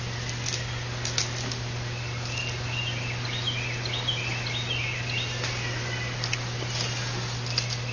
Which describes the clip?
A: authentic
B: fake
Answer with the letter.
A